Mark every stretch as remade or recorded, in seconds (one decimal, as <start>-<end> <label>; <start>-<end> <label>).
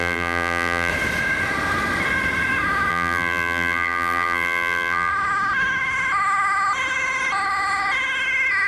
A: 0.0-0.9 remade; 0.9-2.9 recorded; 2.9-5.1 remade; 5.1-8.7 recorded